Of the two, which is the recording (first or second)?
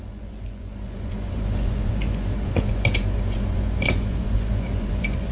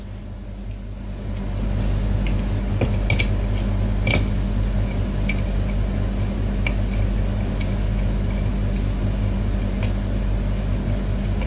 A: second